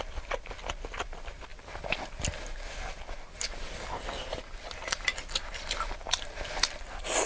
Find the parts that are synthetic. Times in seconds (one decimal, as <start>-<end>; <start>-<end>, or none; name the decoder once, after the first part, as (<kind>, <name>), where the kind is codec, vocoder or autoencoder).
0.0-7.3 (vocoder, BigVGAN v2)